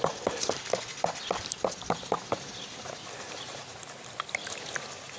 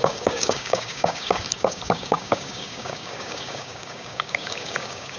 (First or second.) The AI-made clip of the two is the second